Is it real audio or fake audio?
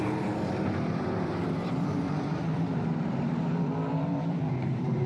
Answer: fake